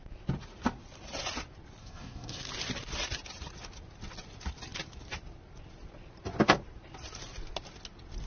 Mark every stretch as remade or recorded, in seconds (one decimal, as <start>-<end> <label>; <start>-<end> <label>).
0.0-1.8 recorded; 1.8-2.4 remade; 2.4-8.3 recorded